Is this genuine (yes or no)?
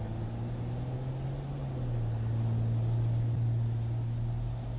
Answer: yes